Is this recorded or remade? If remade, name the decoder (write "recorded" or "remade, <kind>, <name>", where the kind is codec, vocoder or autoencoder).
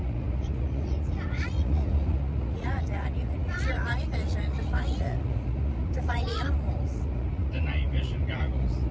remade, vocoder, Vocos